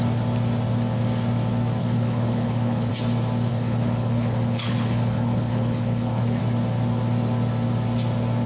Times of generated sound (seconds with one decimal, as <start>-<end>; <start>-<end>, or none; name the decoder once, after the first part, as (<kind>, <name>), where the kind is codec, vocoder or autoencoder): 1.8-2.9 (codec, HILCodec); 3.5-6.4

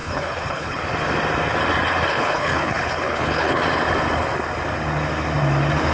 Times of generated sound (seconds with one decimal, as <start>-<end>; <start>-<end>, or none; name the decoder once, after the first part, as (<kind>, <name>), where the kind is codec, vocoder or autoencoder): 0.0-0.8 (codec, HILCodec); 2.1-3.6

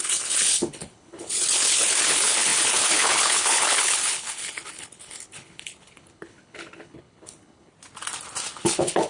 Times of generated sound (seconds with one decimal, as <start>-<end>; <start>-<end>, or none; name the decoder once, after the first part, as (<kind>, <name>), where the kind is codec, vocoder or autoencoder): 0.0-7.7 (codec, HILCodec); 8.5-9.1